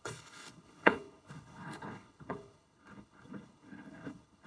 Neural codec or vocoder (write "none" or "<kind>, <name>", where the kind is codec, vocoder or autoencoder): codec, HILCodec